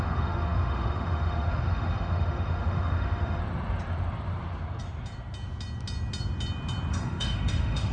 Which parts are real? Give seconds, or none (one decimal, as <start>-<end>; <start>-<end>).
3.4-6.9

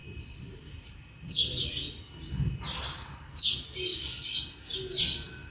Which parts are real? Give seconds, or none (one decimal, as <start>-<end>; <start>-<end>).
1.8-5.5